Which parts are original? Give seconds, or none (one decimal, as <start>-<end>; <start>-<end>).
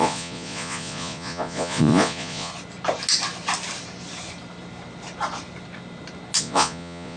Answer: 2.5-6.4